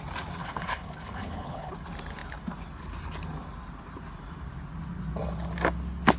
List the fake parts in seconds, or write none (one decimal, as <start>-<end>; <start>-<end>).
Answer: 0.4-1.7